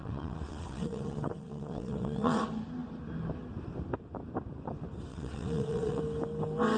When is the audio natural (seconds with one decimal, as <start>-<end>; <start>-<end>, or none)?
2.4-5.1; 6.0-6.8